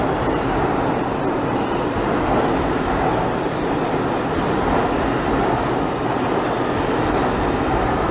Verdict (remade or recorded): recorded